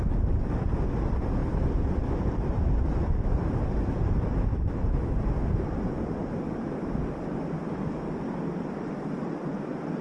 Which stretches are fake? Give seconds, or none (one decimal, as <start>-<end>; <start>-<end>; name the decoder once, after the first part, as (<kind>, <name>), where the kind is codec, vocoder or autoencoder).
4.5-5.2 (autoencoder, DAC-VAE)